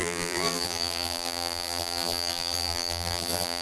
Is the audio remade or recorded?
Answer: remade